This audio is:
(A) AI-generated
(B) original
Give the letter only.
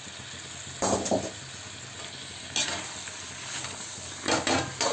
B